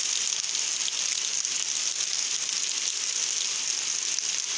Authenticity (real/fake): real